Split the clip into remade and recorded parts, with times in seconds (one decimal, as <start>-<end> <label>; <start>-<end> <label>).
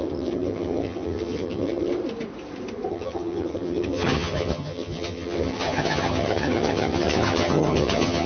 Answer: 0.0-1.9 remade; 1.9-2.9 recorded; 2.9-8.3 remade